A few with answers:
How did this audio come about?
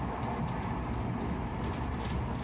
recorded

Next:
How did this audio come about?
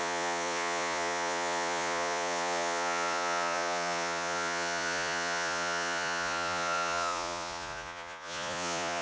remade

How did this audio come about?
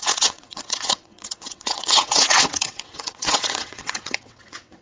remade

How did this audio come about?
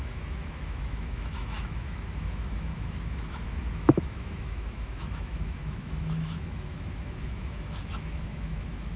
remade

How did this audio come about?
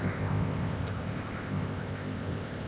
remade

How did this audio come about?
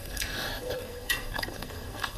remade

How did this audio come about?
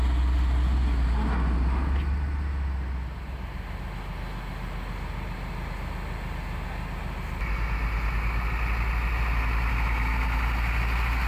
recorded